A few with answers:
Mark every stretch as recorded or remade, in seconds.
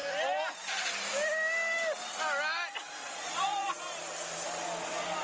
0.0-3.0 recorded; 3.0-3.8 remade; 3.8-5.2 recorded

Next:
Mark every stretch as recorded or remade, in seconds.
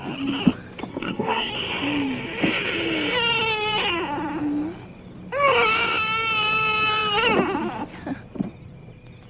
0.0-0.9 recorded; 0.9-1.5 remade; 1.5-9.3 recorded